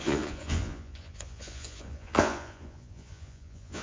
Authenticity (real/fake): fake